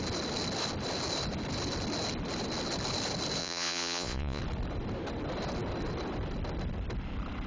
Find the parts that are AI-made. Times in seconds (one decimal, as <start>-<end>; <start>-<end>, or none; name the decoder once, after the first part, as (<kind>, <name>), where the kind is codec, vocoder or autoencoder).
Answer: 3.4-4.4 (vocoder, Vocos)